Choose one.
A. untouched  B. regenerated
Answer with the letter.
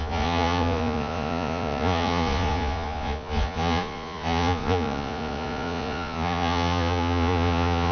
B